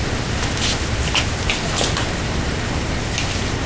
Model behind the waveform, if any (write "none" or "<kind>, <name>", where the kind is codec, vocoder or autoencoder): none